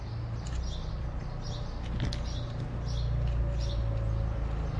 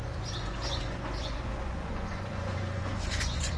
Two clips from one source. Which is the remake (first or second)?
second